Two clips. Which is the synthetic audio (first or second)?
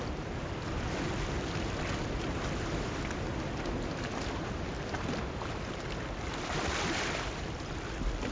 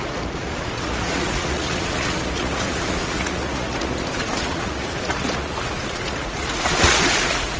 second